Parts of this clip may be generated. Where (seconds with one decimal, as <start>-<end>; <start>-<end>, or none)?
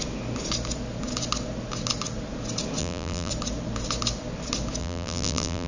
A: 2.8-3.3; 4.8-5.7